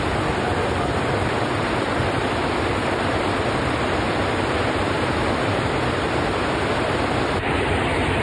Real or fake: real